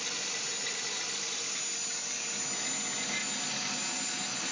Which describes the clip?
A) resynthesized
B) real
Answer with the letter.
B